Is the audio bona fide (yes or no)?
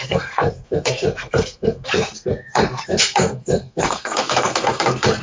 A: no